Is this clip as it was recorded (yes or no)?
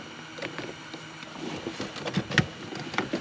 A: yes